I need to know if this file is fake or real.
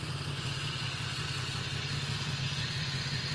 fake